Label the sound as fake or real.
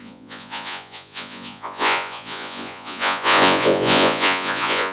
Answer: fake